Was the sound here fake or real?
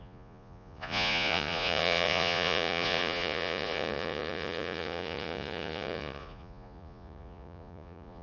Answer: fake